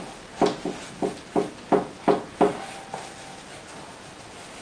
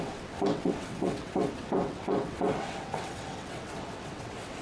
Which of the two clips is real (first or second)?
first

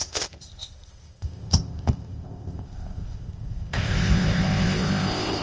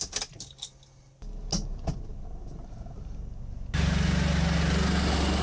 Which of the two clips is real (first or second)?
second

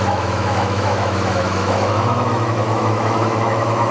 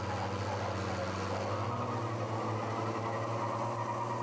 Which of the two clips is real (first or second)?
second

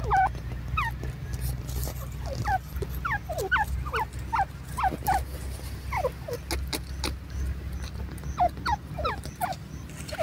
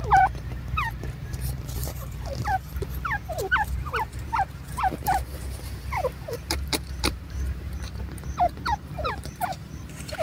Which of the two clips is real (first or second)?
first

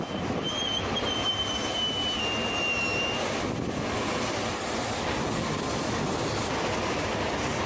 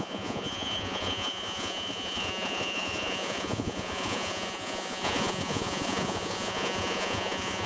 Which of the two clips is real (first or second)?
first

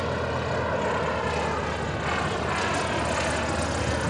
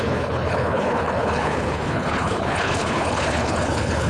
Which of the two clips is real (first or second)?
first